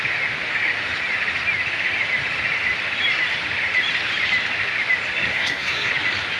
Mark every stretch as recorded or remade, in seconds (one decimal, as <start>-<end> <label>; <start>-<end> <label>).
0.0-5.3 recorded; 5.3-5.9 remade; 5.9-6.4 recorded